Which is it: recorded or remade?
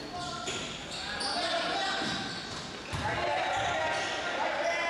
recorded